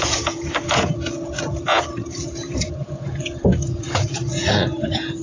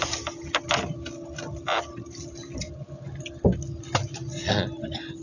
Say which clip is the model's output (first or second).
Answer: first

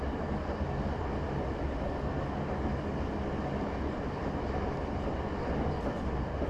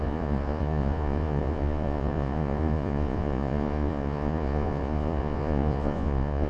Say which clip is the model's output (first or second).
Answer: second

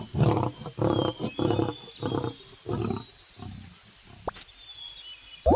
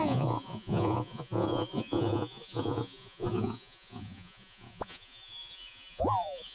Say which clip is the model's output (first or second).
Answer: second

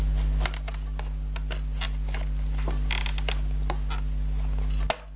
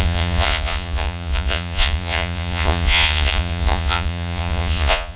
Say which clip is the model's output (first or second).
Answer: second